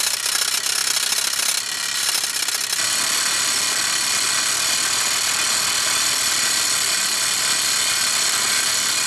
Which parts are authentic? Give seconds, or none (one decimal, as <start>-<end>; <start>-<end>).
0.0-9.1